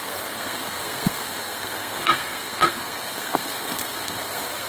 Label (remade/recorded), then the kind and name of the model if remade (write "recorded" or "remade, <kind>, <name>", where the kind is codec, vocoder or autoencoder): remade, codec, SNAC